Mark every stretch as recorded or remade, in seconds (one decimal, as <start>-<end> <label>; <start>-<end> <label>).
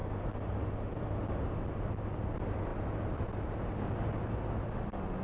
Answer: 0.0-5.2 recorded